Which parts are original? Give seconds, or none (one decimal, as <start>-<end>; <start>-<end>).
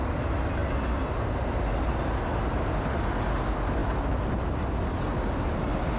0.0-6.0